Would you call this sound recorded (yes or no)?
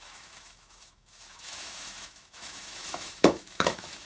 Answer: no